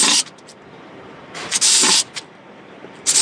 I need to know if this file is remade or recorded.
recorded